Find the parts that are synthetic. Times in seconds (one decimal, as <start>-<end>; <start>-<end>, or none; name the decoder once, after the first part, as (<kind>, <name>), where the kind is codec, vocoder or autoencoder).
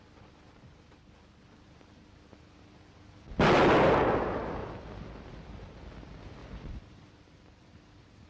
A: 4.6-5.8 (vocoder, BigVGAN v2); 6.4-7.0